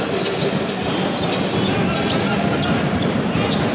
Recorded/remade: recorded